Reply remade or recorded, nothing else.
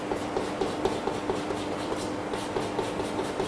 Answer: recorded